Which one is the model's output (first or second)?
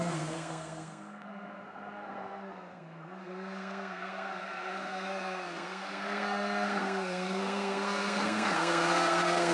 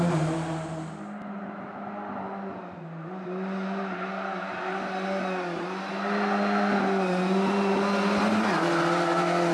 first